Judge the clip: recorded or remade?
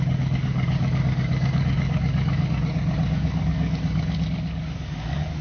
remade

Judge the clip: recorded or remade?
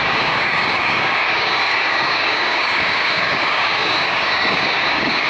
remade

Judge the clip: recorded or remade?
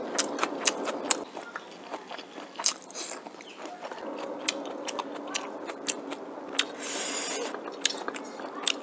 recorded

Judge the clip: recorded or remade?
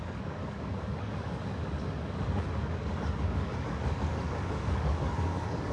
remade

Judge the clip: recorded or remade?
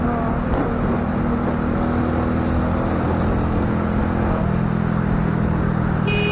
recorded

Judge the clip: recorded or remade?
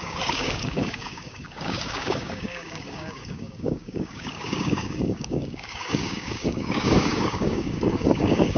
remade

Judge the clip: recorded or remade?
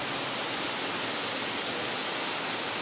recorded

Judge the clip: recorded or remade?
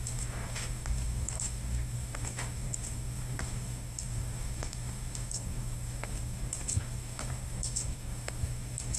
remade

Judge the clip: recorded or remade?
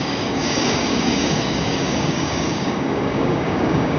remade